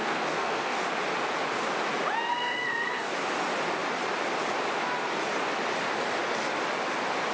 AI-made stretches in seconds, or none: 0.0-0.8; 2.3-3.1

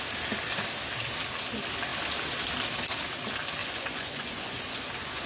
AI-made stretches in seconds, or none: 3.6-5.3